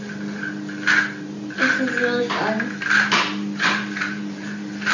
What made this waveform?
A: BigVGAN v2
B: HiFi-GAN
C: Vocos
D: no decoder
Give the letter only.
D